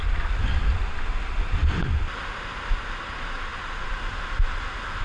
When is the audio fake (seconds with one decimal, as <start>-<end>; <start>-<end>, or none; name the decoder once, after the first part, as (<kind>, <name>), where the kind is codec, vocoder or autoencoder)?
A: 1.6-2.1 (vocoder, BigVGAN v2); 3.5-4.1